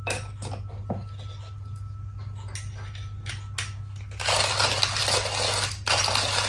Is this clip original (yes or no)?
yes